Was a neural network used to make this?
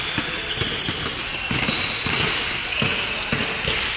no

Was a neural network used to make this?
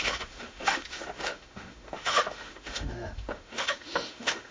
yes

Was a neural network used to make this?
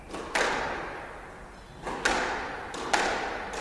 no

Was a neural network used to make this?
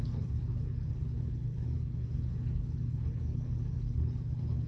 yes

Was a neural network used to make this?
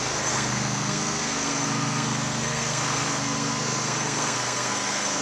yes